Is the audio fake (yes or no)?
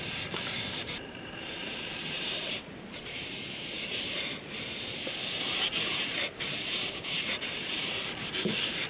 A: yes